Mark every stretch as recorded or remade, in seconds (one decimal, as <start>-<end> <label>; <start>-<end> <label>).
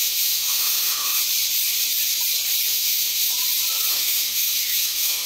0.0-1.2 remade; 1.2-2.7 recorded; 2.7-3.3 remade; 3.3-3.9 recorded; 3.9-5.3 remade